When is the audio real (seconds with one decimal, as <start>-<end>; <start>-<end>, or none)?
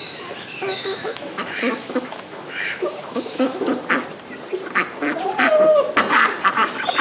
3.7-7.0